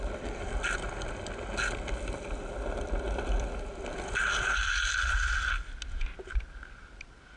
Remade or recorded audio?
recorded